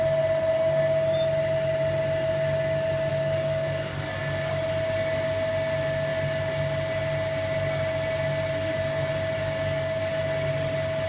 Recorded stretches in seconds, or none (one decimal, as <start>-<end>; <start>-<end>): 0.0-3.1; 4.2-9.4; 10.1-11.1